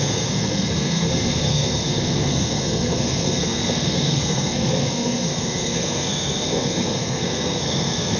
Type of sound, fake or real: fake